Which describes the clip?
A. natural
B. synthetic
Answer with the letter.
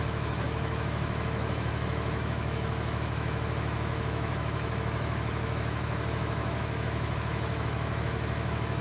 B